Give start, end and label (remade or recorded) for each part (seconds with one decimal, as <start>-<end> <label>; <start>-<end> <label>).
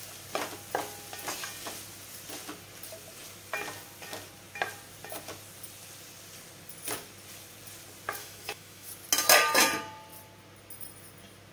0.0-8.2 recorded; 8.2-8.9 remade; 8.9-11.5 recorded